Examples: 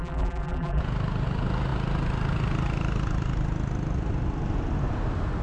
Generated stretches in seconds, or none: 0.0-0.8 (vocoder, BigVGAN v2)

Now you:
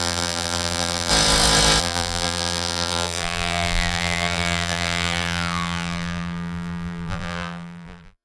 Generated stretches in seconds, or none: 0.0-1.1 (vocoder, BigVGAN v2); 1.8-8.2

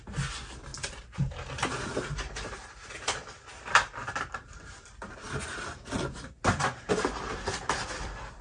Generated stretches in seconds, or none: 0.7-3.6 (vocoder, BigVGAN v2); 4.0-5.6

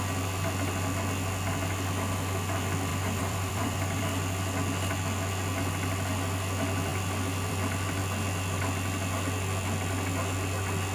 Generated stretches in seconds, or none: 2.9-4.0 (vocoder, BigVGAN v2)

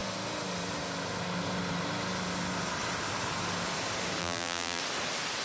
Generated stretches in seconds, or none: 4.2-4.8 (vocoder, BigVGAN v2)

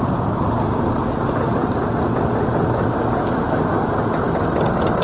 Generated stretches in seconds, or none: none

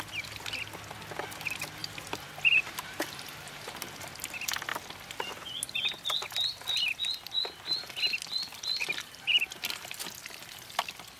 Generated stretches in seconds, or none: 1.8-4.1 (vocoder, BigVGAN v2); 8.8-9.4